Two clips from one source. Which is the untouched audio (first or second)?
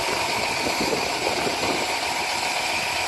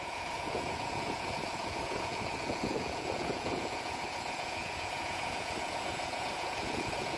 first